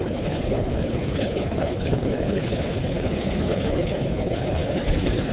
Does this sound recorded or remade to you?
remade